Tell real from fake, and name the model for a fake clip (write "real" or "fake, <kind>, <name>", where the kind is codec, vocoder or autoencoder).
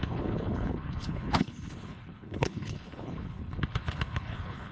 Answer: fake, codec, HILCodec